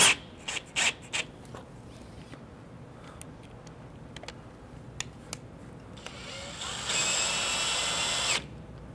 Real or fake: real